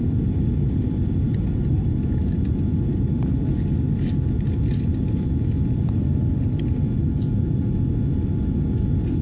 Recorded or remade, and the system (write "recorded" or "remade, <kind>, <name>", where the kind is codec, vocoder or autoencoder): recorded